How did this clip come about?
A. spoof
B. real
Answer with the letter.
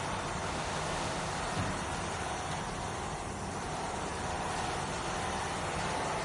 B